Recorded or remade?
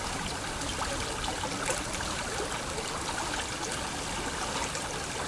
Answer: recorded